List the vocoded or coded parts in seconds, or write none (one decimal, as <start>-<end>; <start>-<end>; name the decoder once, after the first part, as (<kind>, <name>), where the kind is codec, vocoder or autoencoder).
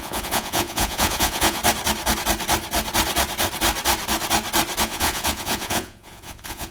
0.0-1.6 (vocoder, Vocos); 4.8-6.7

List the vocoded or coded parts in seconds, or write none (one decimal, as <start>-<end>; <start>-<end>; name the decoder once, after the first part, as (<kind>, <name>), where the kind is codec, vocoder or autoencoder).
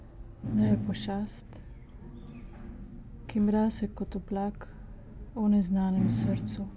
0.0-0.9 (codec, HILCodec)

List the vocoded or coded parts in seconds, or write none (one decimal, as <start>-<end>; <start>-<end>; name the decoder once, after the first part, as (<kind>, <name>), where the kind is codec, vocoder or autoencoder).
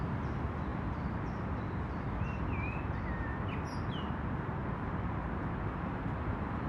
4.6-6.7 (vocoder, BigVGAN v2)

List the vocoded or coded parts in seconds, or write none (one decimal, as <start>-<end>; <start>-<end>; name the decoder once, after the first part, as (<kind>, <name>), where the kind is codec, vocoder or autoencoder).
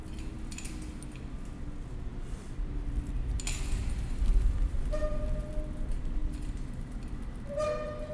3.8-4.8 (vocoder, BigVGAN v2)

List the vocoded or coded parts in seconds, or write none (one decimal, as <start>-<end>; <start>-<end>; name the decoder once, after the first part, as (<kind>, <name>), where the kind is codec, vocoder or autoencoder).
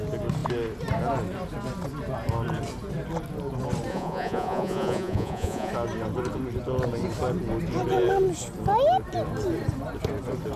3.9-5.7 (vocoder, Vocos)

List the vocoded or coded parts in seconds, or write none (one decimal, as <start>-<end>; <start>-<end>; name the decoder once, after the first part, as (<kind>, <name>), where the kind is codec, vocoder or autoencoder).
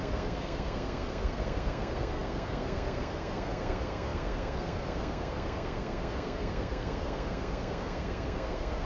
0.0-8.8 (codec, SNAC)